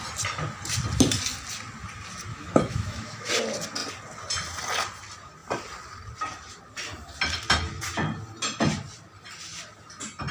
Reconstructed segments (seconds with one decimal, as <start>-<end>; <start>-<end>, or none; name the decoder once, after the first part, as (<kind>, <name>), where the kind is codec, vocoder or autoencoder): 2.3-3.3 (autoencoder, DAC-VAE)